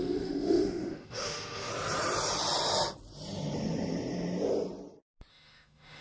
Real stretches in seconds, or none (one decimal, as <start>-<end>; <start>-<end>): 1.7-5.3